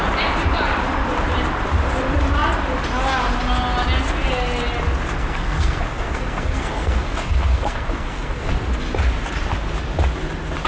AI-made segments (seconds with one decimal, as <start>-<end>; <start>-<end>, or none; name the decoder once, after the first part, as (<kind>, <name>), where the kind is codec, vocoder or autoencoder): 5.2-8.5 (codec, SNAC)